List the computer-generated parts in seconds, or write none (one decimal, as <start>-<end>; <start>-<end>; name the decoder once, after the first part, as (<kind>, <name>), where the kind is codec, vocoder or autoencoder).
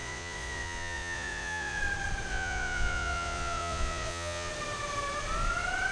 0.0-1.8 (vocoder, Vocos); 2.3-4.5